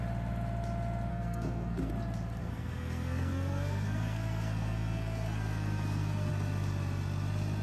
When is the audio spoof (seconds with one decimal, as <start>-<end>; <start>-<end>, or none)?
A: 1.1-1.9; 2.4-6.3